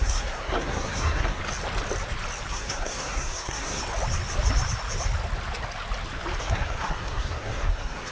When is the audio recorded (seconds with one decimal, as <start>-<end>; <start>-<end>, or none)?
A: 1.4-2.5; 3.8-6.4